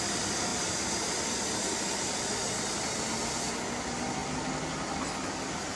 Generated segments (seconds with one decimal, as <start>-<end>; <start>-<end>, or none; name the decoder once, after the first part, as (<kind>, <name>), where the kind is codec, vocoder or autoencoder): none